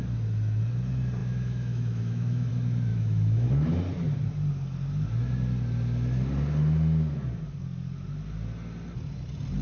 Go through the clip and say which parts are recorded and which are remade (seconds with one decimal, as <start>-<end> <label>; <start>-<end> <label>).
0.0-1.2 recorded; 1.2-2.5 remade; 2.5-2.9 recorded; 2.9-3.5 remade; 3.5-9.6 recorded